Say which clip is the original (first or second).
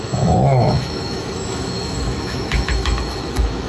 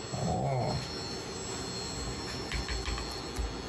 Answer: second